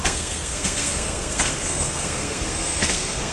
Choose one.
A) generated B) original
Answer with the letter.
A